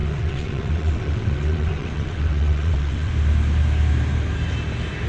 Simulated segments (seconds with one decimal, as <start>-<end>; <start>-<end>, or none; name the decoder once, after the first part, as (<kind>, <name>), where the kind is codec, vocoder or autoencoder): 0.0-3.1 (vocoder, WaveNeXt)